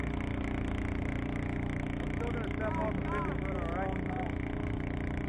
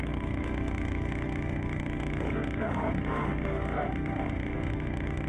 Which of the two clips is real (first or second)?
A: first